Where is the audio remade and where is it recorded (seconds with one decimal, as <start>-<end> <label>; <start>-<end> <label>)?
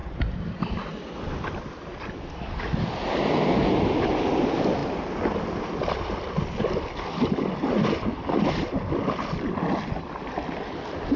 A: 0.0-0.9 remade; 0.9-11.2 recorded